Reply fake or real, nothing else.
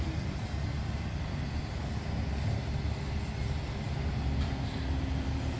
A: real